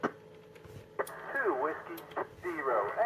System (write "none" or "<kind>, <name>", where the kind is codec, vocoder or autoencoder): none